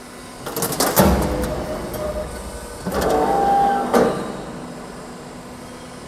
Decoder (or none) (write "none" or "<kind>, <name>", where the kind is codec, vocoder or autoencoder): none